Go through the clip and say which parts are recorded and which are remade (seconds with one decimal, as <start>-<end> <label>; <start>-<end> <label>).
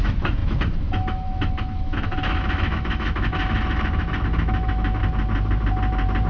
0.0-5.0 remade; 5.0-6.3 recorded